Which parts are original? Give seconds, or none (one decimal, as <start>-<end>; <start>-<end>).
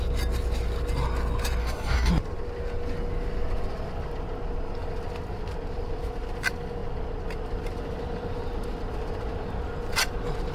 0.0-1.6; 2.1-10.5